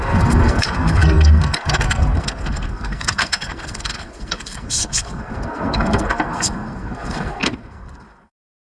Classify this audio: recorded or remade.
remade